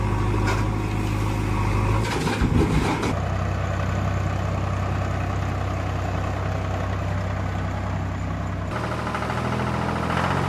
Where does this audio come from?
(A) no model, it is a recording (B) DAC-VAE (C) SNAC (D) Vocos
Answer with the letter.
A